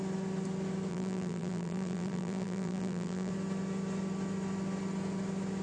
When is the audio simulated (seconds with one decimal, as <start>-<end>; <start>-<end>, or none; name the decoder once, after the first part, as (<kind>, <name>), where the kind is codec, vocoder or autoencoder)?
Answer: 0.9-3.3 (vocoder, BigVGAN v2)